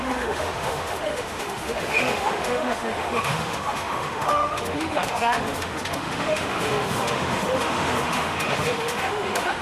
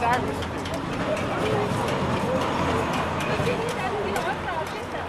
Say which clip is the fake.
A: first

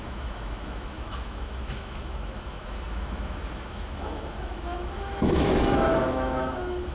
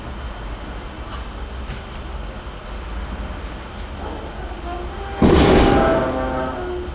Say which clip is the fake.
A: first